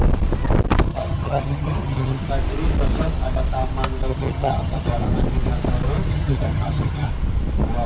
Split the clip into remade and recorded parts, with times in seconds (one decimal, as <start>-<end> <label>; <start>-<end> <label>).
0.0-0.9 recorded; 0.9-2.3 remade; 2.3-4.1 recorded; 4.1-4.9 remade; 4.9-6.1 recorded; 6.1-7.1 remade; 7.1-7.9 recorded